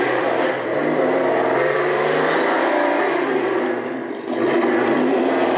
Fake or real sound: fake